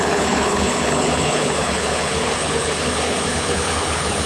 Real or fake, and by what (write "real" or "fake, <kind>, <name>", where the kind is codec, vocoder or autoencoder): fake, codec, HILCodec